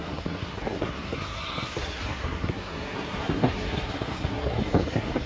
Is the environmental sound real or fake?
fake